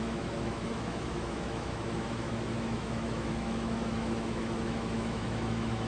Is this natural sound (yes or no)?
no